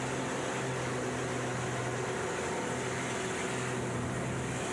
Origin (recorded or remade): recorded